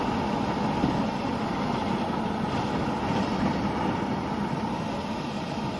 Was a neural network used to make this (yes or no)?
no